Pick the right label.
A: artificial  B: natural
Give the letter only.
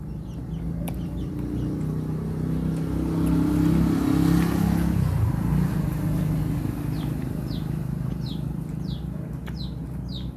B